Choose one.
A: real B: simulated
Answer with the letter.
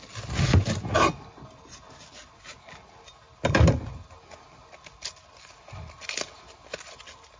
A